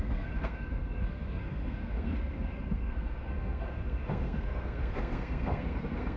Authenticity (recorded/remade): remade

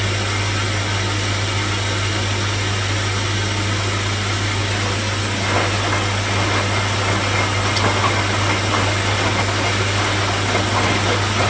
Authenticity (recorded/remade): recorded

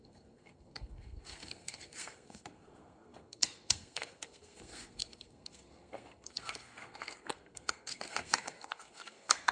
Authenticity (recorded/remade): remade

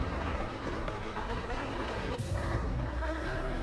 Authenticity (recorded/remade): remade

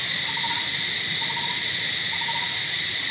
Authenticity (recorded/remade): recorded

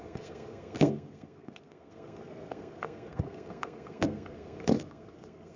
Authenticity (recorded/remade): remade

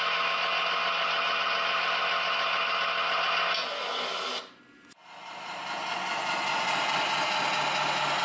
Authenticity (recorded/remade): recorded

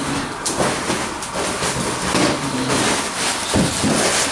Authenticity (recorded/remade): recorded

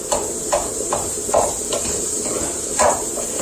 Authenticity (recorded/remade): recorded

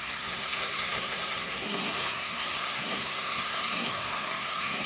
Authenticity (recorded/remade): remade